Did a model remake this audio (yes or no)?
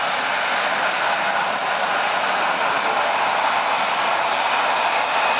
no